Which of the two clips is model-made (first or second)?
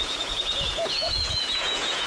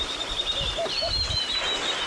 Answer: first